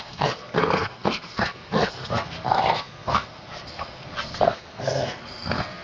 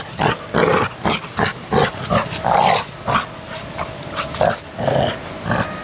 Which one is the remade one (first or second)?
first